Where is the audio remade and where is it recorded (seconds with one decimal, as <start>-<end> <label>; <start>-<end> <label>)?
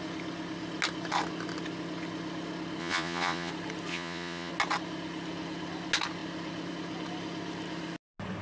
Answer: 0.0-2.8 recorded; 2.8-3.5 remade; 3.5-3.9 recorded; 3.9-4.5 remade; 4.5-8.4 recorded